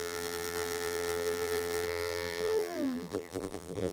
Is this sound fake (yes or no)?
yes